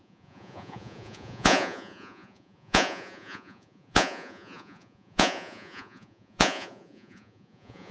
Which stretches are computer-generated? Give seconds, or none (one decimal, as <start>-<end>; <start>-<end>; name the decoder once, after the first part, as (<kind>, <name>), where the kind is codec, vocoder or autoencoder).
0.0-7.9 (vocoder, Vocos)